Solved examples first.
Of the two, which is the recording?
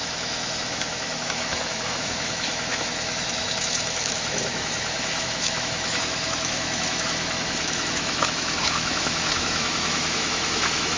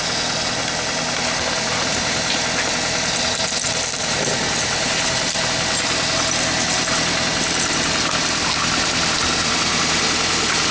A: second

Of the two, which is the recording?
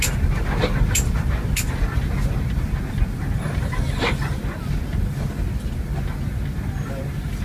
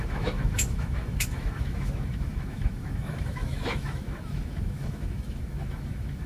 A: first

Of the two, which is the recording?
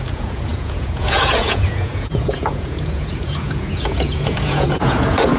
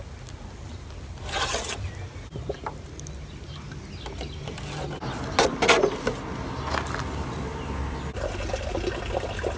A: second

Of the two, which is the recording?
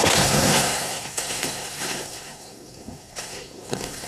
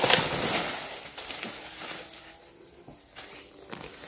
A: second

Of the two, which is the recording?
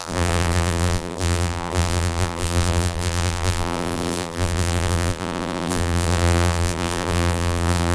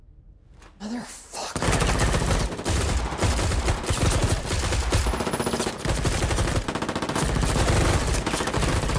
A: second